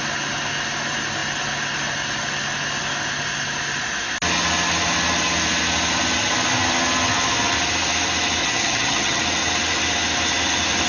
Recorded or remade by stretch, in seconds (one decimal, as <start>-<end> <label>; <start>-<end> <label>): 0.0-8.4 recorded; 8.4-9.2 remade; 9.2-10.9 recorded